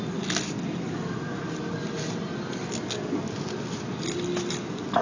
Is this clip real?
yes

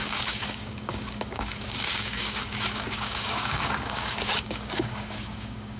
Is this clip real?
no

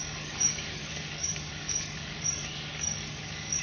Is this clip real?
no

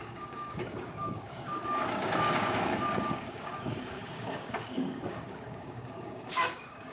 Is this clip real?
no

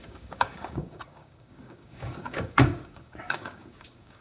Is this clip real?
no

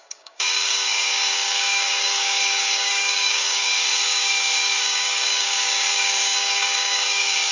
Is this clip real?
no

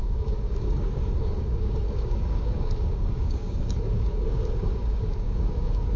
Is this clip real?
no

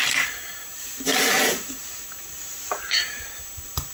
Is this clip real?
yes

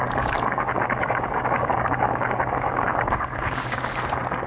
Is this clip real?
no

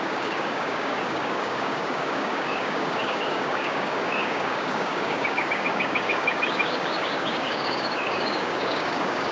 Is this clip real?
no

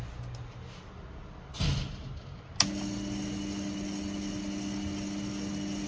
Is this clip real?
yes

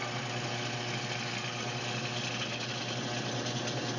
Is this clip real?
yes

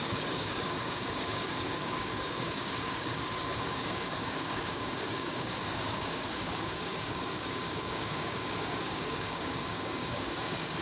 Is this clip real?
no